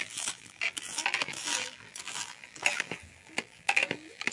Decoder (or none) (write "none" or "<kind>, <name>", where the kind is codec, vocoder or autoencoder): vocoder, BigVGAN v2